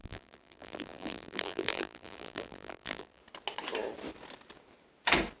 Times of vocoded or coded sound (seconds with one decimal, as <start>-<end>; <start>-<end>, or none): 0.0-3.2